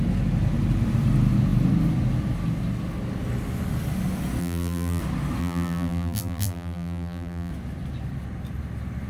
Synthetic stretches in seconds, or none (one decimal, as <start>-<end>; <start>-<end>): 4.4-5.0; 5.4-7.5